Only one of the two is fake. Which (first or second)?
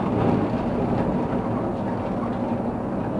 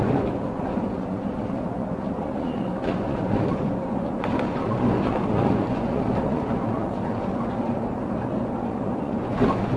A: second